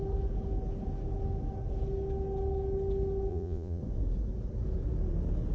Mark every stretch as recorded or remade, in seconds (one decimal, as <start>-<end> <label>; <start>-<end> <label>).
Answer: 0.0-3.3 recorded; 3.3-3.8 remade; 3.8-5.5 recorded